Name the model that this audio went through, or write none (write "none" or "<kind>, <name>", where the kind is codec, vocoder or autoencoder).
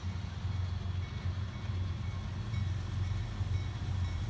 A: none